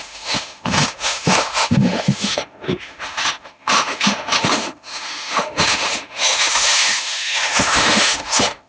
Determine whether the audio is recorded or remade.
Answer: remade